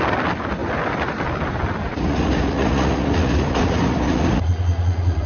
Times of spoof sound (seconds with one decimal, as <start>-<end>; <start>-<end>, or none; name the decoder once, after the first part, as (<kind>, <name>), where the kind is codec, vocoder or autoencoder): 1.9-5.3 (vocoder, Vocos)